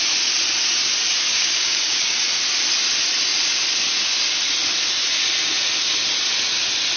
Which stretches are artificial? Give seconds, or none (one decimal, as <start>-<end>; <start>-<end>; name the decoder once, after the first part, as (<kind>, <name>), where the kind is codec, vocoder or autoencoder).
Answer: 1.3-2.2 (codec, DAC)